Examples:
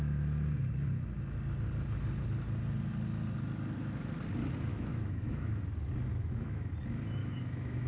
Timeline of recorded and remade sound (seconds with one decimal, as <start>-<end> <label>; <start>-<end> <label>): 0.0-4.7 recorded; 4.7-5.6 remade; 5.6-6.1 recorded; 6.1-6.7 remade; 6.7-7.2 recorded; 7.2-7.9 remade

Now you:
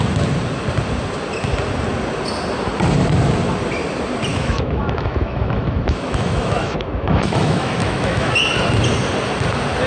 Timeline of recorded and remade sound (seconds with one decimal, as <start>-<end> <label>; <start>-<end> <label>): 0.0-4.3 recorded; 4.3-8.3 remade; 8.3-9.9 recorded

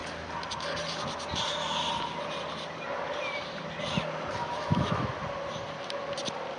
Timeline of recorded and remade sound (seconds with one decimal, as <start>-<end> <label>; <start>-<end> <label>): 0.0-4.4 recorded; 4.4-5.1 remade; 5.1-6.6 recorded

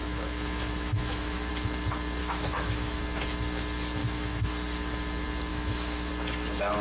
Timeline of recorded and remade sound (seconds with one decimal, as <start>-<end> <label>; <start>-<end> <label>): 0.0-1.5 remade; 1.5-2.2 recorded; 2.2-3.0 remade; 3.0-4.0 recorded; 4.0-4.5 remade; 4.5-5.5 recorded; 5.5-6.1 remade; 6.1-6.8 recorded

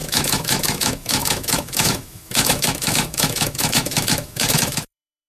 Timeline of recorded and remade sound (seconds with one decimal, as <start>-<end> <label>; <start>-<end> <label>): 0.0-5.3 remade

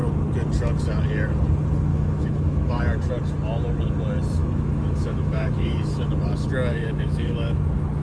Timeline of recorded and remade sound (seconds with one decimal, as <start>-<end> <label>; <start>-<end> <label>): 0.0-1.9 recorded; 1.9-2.8 remade; 2.8-4.4 recorded; 4.4-6.1 remade; 6.1-6.7 recorded; 6.7-7.6 remade; 7.6-8.0 recorded

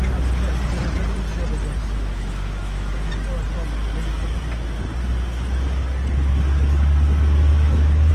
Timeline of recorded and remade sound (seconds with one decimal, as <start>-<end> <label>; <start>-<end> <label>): 0.0-1.8 recorded; 1.8-3.1 remade; 3.1-7.5 recorded; 7.5-8.1 remade